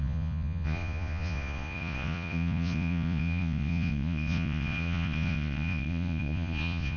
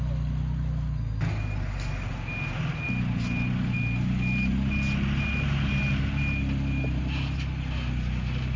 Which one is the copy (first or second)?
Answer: first